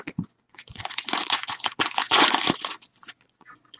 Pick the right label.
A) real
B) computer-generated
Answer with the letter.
B